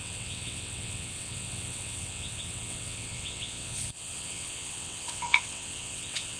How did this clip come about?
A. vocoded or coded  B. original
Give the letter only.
A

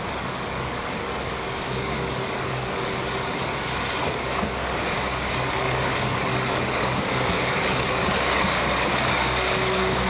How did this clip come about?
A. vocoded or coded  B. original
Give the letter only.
A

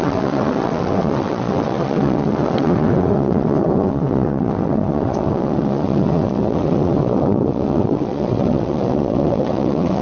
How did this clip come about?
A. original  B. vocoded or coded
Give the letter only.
B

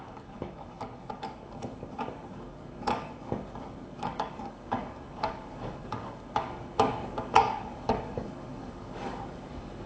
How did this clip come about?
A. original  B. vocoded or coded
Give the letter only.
B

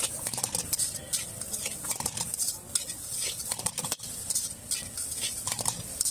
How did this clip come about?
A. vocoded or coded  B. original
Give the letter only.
B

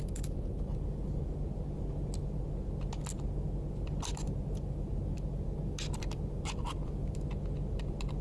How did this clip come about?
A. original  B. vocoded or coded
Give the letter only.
A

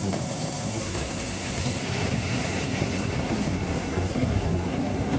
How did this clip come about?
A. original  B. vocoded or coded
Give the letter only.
B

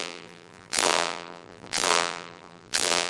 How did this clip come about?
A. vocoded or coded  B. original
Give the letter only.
A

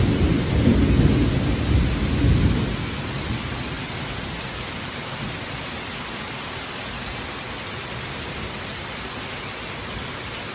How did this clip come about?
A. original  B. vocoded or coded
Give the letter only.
A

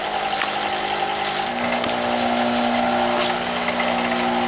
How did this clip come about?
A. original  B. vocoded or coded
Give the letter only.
A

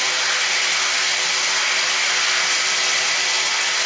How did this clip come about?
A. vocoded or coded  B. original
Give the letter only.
B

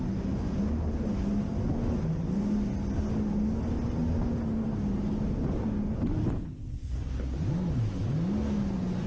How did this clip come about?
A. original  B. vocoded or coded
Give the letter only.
A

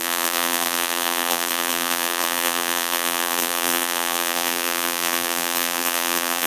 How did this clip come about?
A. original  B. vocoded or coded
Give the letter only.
B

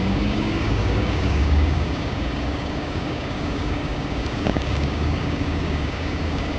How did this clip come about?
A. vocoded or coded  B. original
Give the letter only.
A